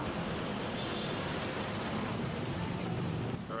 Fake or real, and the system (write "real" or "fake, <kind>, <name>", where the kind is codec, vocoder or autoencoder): fake, vocoder, BigVGAN v2